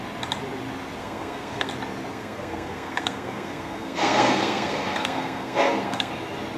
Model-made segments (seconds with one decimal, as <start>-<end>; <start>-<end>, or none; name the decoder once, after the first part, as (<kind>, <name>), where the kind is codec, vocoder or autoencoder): 1.0-1.7 (codec, SNAC); 2.1-6.1